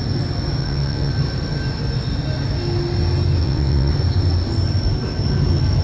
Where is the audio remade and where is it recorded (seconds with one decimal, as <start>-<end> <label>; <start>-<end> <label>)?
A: 0.0-0.6 recorded; 0.6-1.1 remade; 1.1-3.4 recorded; 3.4-3.9 remade; 3.9-5.8 recorded